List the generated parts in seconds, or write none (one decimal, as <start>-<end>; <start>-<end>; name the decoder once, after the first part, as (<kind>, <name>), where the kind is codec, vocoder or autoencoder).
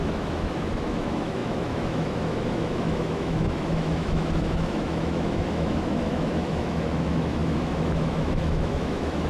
0.0-9.3 (autoencoder, DAC-VAE)